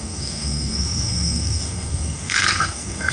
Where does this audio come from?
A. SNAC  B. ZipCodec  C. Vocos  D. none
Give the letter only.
A